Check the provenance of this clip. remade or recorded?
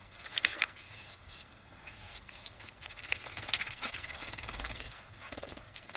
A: remade